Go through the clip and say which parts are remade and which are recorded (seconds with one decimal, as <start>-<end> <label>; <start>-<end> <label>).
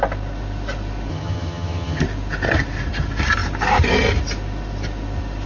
0.0-1.1 recorded; 1.1-2.0 remade; 2.0-5.5 recorded